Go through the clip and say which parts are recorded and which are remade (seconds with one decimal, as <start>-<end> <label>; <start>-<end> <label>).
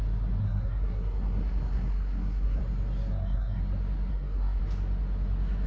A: 0.0-0.4 recorded; 0.4-2.6 remade; 2.6-3.1 recorded; 3.1-3.6 remade; 3.6-4.1 recorded; 4.1-4.6 remade; 4.6-5.7 recorded